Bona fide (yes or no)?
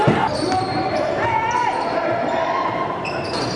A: no